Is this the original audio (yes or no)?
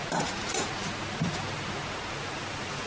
yes